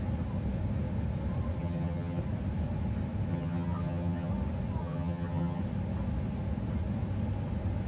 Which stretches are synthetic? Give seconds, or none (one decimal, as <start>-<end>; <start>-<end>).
1.6-2.2; 3.3-4.3; 4.8-5.6